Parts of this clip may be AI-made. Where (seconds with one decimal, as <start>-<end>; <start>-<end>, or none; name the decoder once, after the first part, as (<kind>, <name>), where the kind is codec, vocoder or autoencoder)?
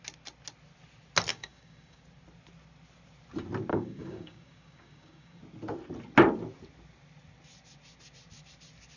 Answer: 1.3-2.0 (codec, DAC); 3.7-5.4